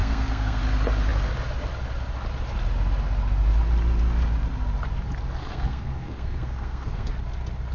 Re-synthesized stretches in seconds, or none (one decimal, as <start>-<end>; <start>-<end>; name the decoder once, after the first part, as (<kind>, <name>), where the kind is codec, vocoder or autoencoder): 0.0-0.6 (codec, SNAC); 5.4-7.1